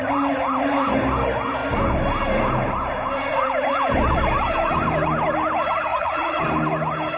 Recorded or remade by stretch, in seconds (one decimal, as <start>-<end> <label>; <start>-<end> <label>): 0.0-5.9 recorded; 5.9-6.4 remade; 6.4-7.2 recorded